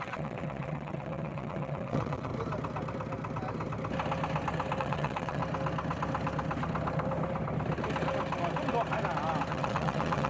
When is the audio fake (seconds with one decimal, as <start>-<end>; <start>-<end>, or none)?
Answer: 0.0-2.3; 4.8-5.4; 9.5-10.3